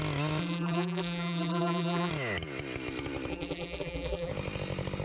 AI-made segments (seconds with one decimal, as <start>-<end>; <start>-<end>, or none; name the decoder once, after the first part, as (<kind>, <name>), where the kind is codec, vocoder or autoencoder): 0.4-2.1 (vocoder, BigVGAN v2); 3.3-4.3